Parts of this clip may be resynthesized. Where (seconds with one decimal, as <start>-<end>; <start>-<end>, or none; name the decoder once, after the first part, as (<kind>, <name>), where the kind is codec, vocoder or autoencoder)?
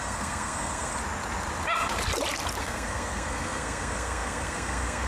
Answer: 0.0-0.9 (codec, SNAC); 2.6-5.1